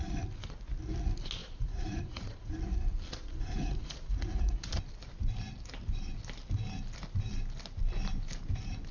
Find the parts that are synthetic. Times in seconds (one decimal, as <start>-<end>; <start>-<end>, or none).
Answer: 1.4-2.5; 3.3-4.7

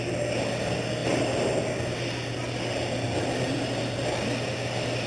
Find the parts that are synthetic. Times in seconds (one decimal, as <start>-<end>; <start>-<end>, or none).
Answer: none